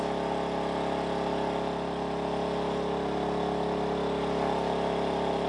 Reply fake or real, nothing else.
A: real